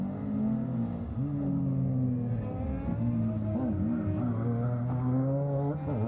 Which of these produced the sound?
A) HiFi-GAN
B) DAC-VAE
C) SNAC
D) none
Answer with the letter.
D